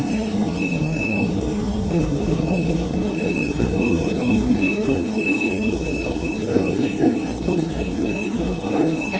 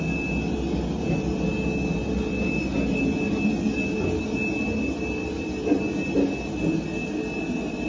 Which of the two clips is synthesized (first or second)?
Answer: first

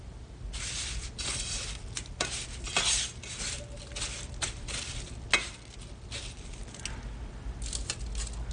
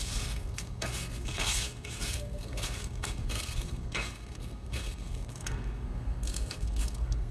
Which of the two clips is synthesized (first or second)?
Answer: second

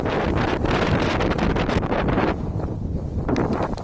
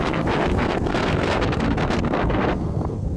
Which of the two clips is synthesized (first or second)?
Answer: second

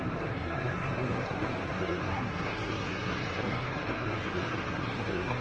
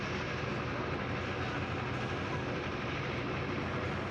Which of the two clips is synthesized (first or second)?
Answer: first